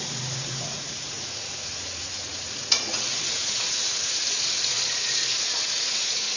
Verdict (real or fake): fake